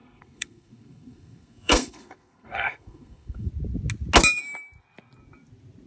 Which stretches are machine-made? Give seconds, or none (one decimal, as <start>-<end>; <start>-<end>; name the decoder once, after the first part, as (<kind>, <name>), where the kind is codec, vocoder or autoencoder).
0.0-3.5 (codec, SNAC)